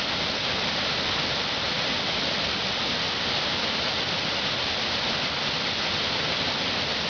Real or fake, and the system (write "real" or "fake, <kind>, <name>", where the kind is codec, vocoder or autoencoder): real